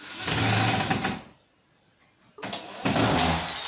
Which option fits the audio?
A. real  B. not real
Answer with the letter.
A